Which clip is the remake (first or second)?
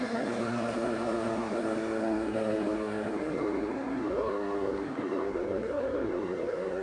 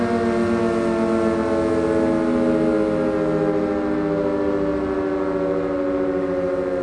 first